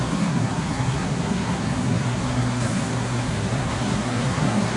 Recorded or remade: remade